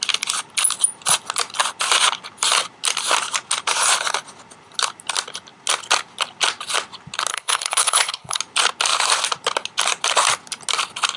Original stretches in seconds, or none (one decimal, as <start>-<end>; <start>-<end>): 0.0-7.3; 8.4-11.2